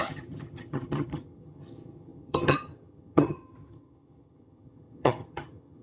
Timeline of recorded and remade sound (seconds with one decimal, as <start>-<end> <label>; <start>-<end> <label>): 0.0-5.8 remade